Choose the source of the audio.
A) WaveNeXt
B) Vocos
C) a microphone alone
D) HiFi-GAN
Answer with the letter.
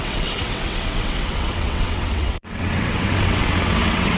A